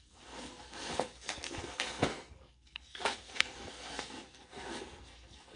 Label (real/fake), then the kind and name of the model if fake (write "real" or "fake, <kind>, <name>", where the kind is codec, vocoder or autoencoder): fake, codec, SNAC